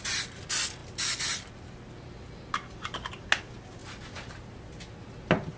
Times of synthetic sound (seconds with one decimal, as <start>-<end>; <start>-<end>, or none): none